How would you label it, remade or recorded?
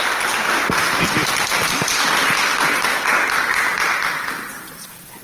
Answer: recorded